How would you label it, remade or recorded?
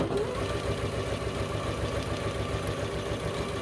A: recorded